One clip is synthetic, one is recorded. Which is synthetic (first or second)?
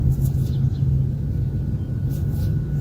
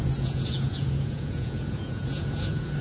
second